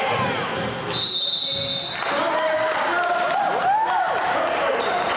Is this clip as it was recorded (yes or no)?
yes